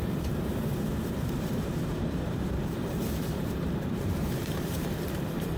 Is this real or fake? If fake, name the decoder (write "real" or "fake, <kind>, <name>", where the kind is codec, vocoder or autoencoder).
fake, vocoder, BigVGAN v2